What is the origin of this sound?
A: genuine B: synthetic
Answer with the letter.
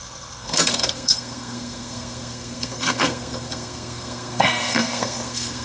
B